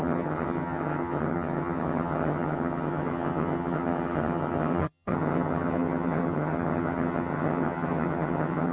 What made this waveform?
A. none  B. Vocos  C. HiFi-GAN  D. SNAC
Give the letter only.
C